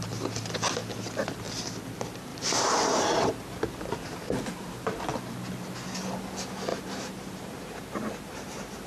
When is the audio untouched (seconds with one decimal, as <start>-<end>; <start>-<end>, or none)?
0.0-2.3; 3.0-6.7